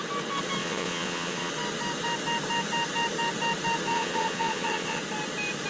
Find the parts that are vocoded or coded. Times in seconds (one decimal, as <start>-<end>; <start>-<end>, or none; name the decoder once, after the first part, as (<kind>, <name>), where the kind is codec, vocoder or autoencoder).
0.6-1.5 (vocoder, Vocos); 3.9-5.0